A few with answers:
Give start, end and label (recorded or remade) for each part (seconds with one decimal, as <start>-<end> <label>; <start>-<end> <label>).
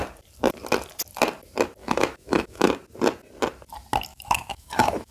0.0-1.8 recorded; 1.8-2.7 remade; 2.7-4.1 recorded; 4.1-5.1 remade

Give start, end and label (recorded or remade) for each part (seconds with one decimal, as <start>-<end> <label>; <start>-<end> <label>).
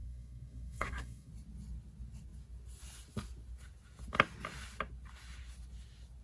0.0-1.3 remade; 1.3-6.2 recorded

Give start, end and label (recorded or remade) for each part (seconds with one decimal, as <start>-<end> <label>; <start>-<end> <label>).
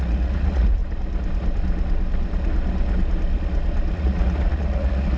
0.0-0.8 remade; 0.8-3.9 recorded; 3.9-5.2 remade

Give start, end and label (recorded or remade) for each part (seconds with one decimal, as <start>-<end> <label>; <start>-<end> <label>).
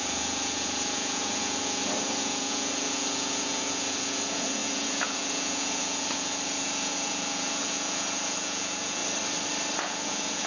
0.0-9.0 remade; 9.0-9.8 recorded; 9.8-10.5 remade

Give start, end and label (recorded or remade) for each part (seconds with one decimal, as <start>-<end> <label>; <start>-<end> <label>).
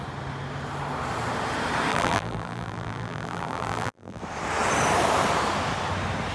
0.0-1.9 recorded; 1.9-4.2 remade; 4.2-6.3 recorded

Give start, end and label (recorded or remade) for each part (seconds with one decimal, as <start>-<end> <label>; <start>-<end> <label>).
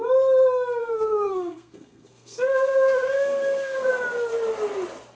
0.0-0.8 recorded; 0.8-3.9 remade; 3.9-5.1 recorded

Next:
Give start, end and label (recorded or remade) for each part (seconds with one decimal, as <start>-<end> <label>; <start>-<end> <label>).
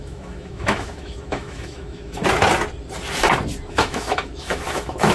0.0-2.2 remade; 2.2-3.7 recorded; 3.7-5.1 remade